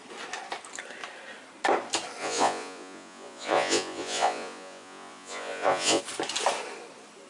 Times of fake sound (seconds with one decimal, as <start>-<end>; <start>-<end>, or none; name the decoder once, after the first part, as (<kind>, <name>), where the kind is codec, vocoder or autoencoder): 2.2-6.0 (vocoder, Vocos)